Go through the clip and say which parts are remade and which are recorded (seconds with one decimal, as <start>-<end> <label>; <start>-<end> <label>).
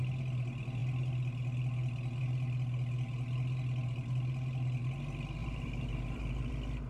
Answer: 0.0-5.4 recorded; 5.4-6.5 remade; 6.5-6.9 recorded